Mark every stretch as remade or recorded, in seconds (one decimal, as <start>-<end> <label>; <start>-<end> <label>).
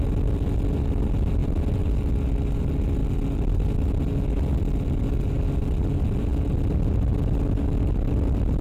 0.0-8.6 recorded